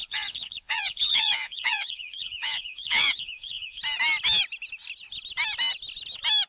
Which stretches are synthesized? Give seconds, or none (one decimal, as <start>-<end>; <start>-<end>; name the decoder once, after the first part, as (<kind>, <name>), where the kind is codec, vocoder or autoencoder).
0.0-3.8 (vocoder, Vocos)